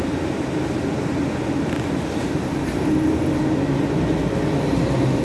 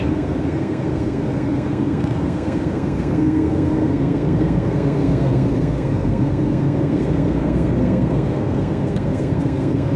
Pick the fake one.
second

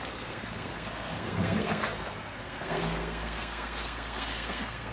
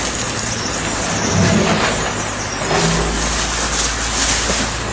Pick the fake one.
first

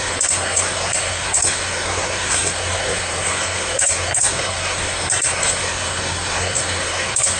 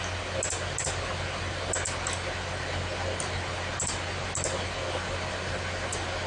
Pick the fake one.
first